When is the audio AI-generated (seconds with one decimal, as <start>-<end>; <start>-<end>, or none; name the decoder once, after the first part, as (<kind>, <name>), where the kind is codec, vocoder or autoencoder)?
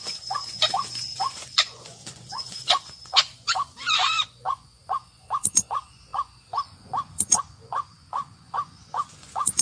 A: 0.0-9.6 (vocoder, Vocos)